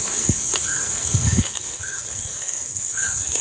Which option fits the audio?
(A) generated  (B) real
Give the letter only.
A